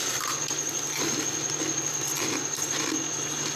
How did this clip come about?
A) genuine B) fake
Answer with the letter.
A